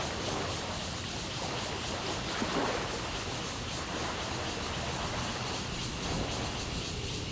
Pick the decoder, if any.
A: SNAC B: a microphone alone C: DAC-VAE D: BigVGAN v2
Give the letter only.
B